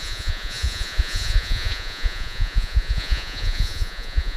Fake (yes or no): yes